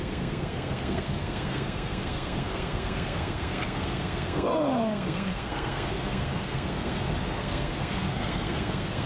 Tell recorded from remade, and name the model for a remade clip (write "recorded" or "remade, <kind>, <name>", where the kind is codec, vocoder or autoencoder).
remade, codec, SNAC